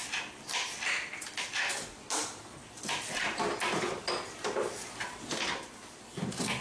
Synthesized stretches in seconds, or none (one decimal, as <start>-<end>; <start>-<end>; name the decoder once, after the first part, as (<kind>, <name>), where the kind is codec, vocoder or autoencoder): 0.0-6.6 (vocoder, BigVGAN v2)